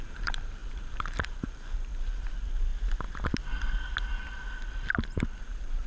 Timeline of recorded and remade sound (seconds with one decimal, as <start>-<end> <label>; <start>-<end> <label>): 0.0-2.7 remade; 2.7-5.4 recorded; 5.4-5.9 remade